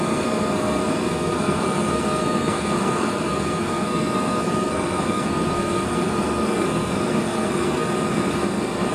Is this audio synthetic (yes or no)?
yes